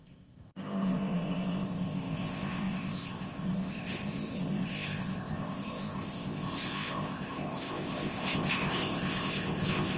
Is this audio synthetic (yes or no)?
yes